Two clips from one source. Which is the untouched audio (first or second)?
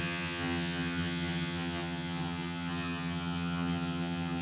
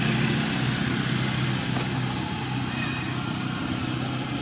second